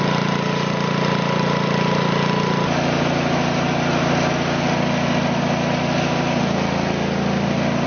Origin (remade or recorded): recorded